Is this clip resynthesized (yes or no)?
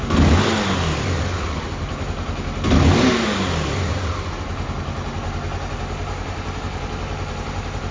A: no